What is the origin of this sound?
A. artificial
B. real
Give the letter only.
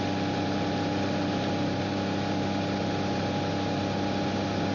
B